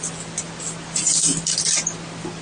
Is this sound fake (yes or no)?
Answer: no